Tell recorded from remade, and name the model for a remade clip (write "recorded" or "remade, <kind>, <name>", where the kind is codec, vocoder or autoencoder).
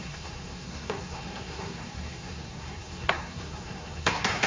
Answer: remade, codec, SNAC